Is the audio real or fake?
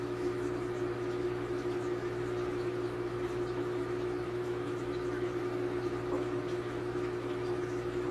fake